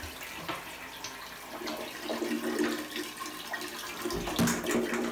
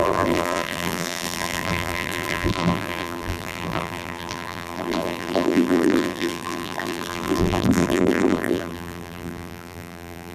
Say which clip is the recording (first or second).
first